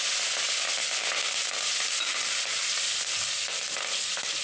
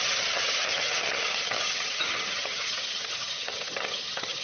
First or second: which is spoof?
second